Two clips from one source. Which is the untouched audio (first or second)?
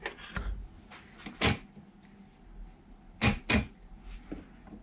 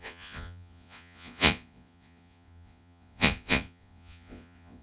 first